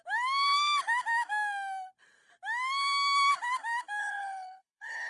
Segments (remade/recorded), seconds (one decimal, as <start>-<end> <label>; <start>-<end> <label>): 0.0-4.0 recorded; 4.0-5.1 remade